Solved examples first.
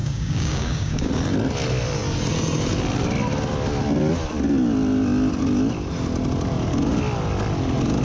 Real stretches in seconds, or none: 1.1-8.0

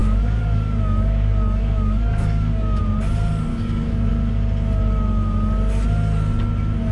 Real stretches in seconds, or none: 2.8-3.5; 4.1-6.9

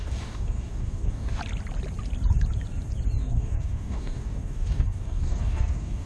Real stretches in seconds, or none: 1.4-3.2

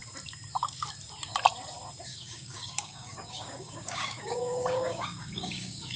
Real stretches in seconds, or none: 0.0-2.1

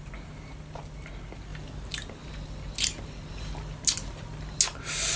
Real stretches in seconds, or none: 0.0-5.2

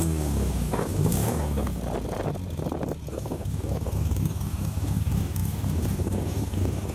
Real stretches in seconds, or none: 1.8-3.1

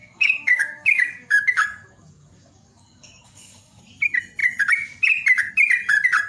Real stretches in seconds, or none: 3.8-6.3